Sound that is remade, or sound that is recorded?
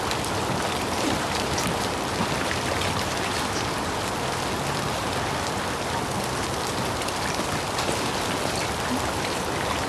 recorded